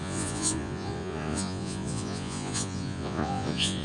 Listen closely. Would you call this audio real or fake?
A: fake